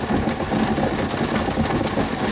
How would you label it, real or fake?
real